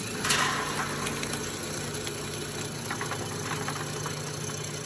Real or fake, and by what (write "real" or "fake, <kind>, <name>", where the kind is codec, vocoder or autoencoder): real